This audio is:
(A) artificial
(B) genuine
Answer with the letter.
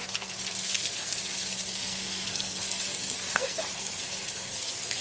A